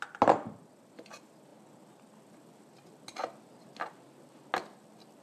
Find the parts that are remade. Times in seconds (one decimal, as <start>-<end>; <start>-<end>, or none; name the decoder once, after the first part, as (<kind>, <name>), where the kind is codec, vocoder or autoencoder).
none